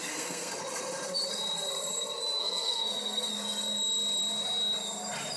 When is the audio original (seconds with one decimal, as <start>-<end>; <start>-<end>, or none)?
0.6-2.4; 3.3-5.4